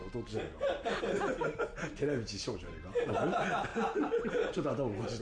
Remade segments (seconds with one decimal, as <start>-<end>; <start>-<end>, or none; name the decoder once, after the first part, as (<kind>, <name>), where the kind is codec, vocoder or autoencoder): none